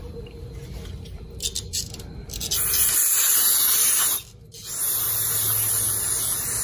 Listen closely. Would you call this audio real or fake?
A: real